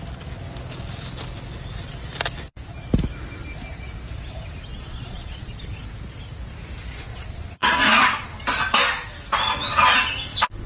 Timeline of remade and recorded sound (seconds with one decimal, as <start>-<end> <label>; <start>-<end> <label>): 0.0-4.7 recorded; 4.7-5.6 remade; 5.6-7.1 recorded; 7.1-7.8 remade; 7.8-10.7 recorded